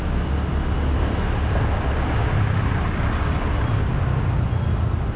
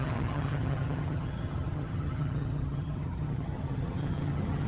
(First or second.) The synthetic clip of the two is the second